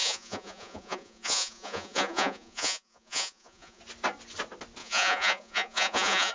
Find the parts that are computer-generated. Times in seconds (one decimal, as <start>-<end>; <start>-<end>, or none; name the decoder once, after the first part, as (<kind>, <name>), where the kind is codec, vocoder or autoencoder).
0.0-3.8 (vocoder, Vocos); 4.8-6.3